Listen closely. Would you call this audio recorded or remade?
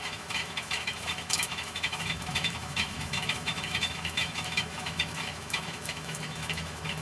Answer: remade